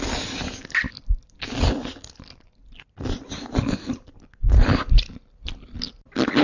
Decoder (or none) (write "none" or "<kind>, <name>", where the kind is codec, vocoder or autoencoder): none